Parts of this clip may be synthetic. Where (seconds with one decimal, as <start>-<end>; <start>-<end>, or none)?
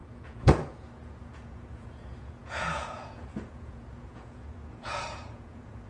0.0-5.9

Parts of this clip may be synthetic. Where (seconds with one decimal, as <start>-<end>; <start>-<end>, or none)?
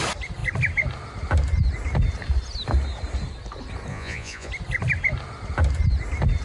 3.9-4.5